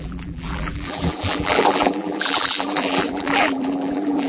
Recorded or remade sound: remade